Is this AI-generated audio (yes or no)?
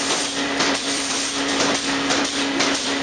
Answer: yes